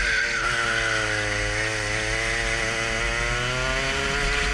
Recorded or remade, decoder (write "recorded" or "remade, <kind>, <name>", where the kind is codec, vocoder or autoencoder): recorded